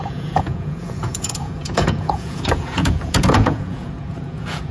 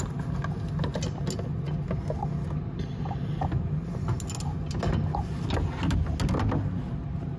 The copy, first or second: first